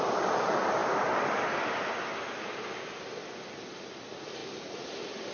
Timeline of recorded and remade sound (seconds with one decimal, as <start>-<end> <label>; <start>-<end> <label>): 0.0-5.3 recorded